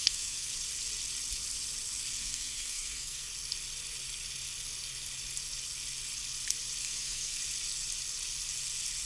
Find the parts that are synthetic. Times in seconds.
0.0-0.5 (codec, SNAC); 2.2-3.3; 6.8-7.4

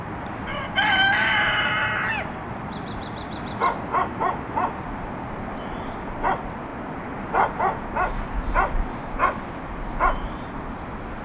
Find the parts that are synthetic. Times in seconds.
none